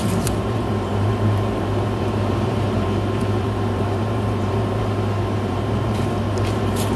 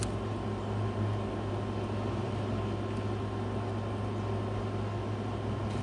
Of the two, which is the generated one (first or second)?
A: first